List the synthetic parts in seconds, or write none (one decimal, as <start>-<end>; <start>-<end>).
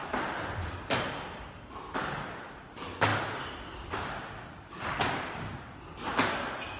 none